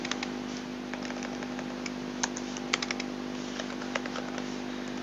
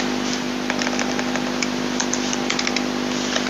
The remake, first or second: second